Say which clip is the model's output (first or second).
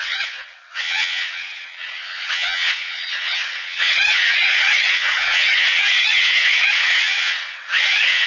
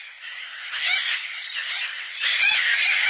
first